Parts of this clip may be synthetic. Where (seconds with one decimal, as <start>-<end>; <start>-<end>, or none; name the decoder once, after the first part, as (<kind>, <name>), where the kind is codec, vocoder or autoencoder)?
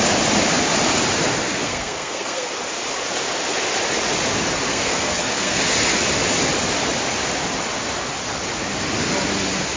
1.4-2.5 (codec, SNAC); 4.7-5.6